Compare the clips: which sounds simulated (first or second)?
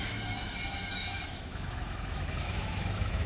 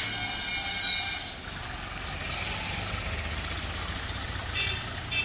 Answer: first